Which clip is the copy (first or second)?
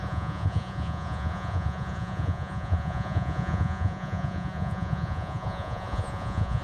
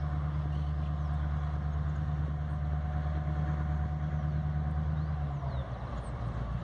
first